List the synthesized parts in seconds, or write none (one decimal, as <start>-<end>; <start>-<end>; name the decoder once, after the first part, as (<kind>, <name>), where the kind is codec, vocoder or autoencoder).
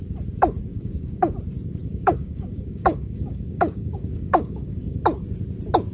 0.7-1.3 (codec, DAC); 1.8-5.0